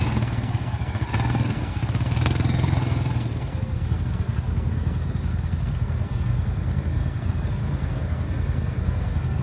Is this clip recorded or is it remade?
remade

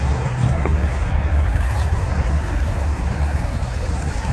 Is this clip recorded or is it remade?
remade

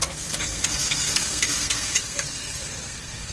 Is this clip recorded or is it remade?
remade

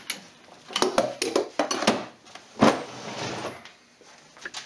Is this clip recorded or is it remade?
recorded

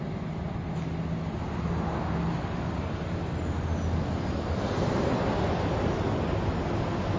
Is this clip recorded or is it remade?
recorded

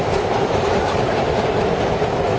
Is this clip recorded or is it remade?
recorded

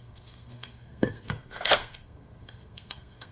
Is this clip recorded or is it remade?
remade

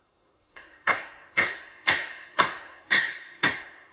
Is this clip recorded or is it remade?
remade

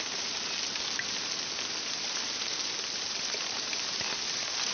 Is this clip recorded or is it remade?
recorded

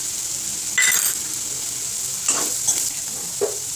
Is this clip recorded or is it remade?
recorded